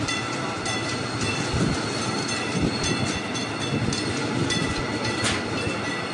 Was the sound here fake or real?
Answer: real